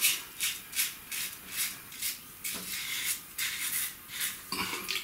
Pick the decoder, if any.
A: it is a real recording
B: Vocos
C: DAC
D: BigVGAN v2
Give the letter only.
A